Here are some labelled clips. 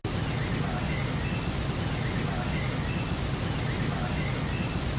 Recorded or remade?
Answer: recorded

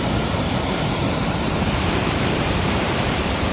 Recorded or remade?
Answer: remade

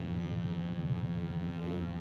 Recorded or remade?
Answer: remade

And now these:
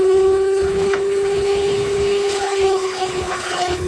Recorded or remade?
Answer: remade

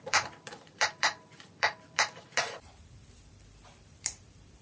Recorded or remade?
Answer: remade